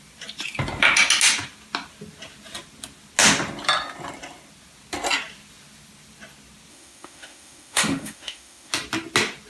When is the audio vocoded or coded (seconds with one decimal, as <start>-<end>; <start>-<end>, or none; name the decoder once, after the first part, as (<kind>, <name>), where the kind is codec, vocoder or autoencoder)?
6.7-8.7 (autoencoder, DAC-VAE)